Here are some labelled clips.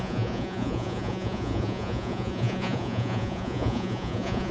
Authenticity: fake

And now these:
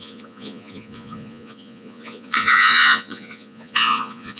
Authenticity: fake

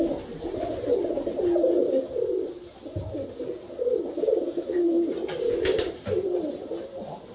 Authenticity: real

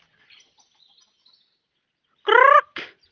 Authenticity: real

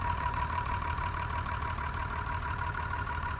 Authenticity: fake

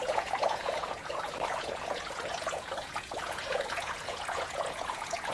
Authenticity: fake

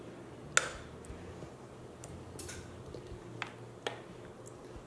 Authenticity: real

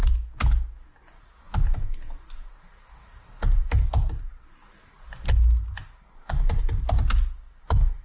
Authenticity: real